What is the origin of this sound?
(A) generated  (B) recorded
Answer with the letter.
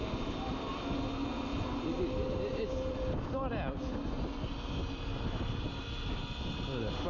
B